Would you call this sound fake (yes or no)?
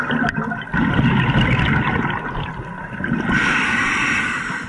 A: no